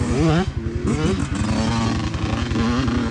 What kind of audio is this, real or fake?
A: real